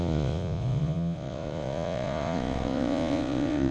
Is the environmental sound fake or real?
fake